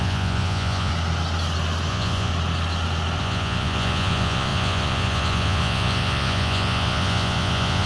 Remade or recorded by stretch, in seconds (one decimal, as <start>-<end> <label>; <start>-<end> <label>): 0.0-0.9 remade; 0.9-1.9 recorded; 1.9-2.3 remade; 2.3-3.2 recorded; 3.2-7.9 remade